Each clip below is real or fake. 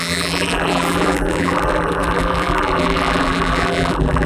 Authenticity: fake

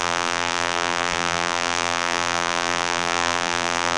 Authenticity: fake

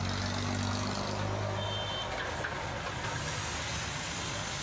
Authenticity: real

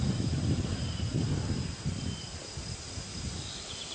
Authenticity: real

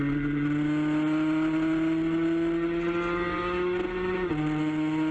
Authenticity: real